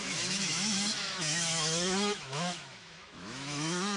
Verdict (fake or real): fake